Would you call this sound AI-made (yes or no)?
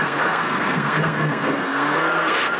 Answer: yes